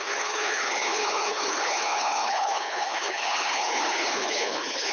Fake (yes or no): yes